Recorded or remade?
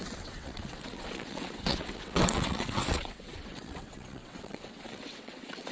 remade